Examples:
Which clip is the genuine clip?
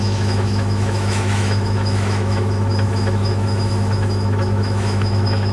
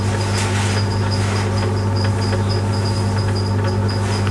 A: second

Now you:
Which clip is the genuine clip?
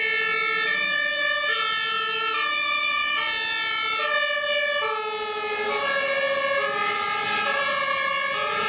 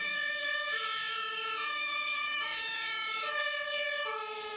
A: first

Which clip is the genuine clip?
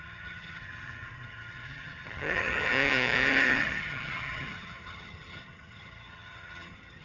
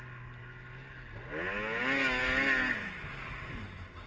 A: second